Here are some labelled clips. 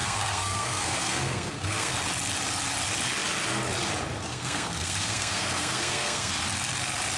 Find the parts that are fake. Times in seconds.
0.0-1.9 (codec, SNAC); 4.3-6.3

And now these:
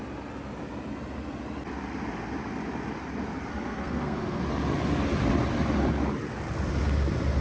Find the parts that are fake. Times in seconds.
3.5-4.4 (codec, SNAC)

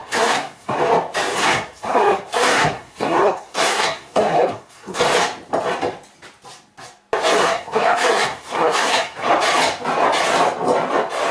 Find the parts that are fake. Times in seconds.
0.0-0.8 (codec, SNAC); 1.4-5.0; 7.4-9.3

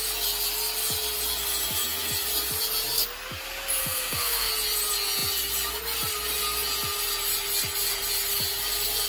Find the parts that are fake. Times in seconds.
3.8-4.5 (codec, SNAC)

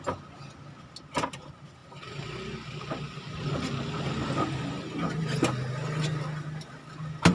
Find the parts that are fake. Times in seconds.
none

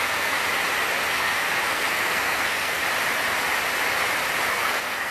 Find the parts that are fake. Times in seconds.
0.0-0.4 (codec, SNAC); 1.1-2.8; 4.5-5.1